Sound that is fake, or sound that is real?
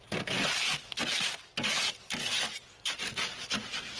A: real